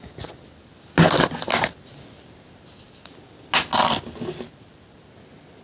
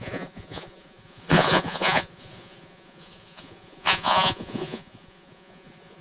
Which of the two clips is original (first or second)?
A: first